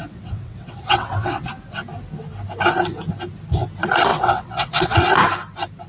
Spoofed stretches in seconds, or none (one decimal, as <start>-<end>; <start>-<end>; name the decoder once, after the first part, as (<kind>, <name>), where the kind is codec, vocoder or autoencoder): 0.0-1.5 (vocoder, WaveNeXt); 4.1-5.0